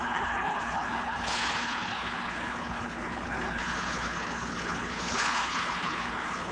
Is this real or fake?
fake